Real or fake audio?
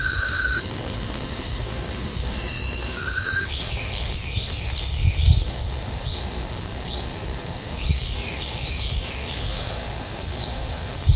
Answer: fake